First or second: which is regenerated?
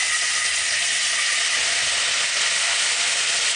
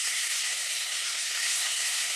second